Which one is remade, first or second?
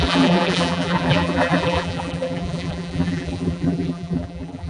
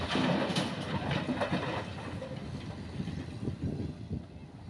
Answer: first